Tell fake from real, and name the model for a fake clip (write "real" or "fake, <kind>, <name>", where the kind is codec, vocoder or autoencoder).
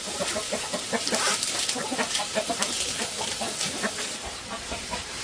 fake, vocoder, BigVGAN v2